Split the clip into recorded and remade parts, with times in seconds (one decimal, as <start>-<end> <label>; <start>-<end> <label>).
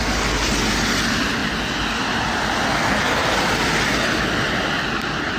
0.0-5.4 recorded